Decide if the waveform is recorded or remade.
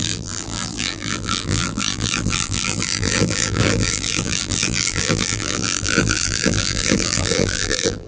remade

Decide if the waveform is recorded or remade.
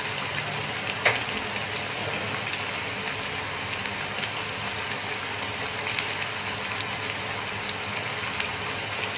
recorded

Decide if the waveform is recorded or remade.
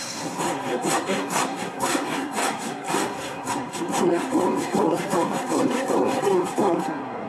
remade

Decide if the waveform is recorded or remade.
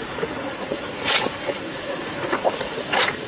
remade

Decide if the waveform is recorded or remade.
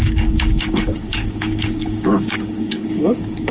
remade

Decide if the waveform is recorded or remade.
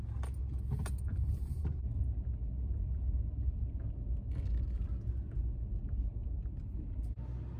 recorded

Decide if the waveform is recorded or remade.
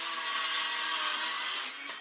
recorded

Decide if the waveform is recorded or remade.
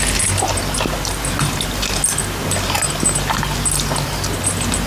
recorded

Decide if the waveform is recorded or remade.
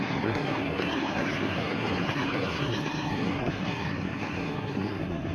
remade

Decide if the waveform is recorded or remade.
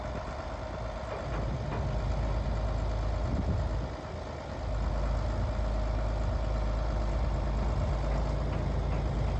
recorded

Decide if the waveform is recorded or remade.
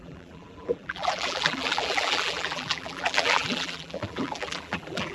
remade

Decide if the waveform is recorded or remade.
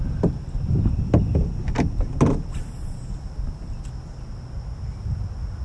recorded